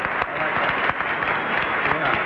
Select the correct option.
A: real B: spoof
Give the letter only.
A